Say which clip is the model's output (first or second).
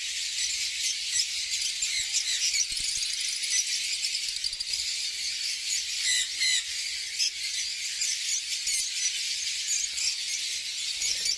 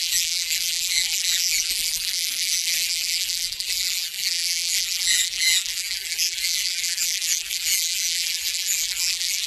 second